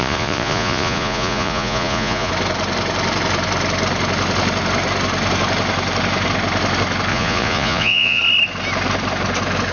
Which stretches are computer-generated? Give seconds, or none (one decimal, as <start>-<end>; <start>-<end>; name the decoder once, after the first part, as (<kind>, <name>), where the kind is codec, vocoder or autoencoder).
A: 0.0-2.3 (vocoder, Vocos); 7.1-8.2